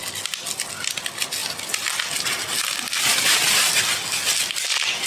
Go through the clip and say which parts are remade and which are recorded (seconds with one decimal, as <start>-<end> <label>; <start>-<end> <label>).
0.0-5.1 recorded